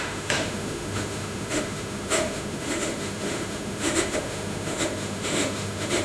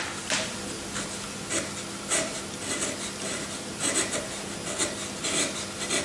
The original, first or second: second